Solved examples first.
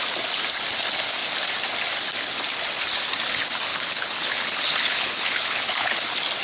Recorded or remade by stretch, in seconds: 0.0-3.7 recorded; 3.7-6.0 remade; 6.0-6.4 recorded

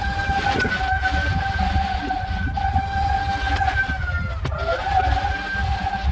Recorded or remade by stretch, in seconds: 0.0-6.1 recorded

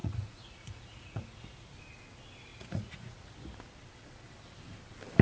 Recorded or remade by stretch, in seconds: 0.0-1.7 remade; 1.7-2.5 recorded; 2.5-3.3 remade; 3.3-5.2 recorded

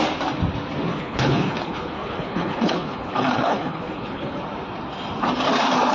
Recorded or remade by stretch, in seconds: 0.0-0.9 recorded; 0.9-4.4 remade; 4.4-5.9 recorded

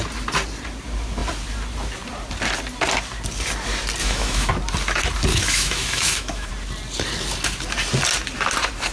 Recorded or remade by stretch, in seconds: 0.0-4.0 recorded; 4.0-4.5 remade; 4.5-5.3 recorded; 5.3-6.5 remade; 6.5-8.9 recorded

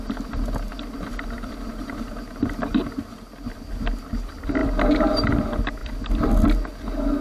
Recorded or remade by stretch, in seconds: 0.0-7.2 recorded

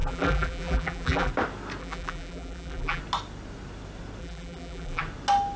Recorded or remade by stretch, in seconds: 0.0-1.3 remade; 1.3-1.8 recorded; 1.8-3.0 remade; 3.0-4.2 recorded; 4.2-5.0 remade; 5.0-5.6 recorded

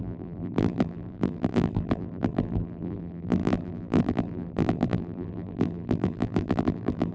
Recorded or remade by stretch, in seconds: 0.0-7.1 remade